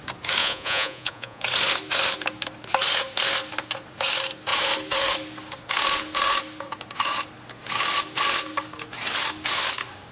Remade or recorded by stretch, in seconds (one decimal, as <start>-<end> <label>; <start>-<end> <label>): 0.0-0.4 recorded; 0.4-1.4 remade; 1.4-10.1 recorded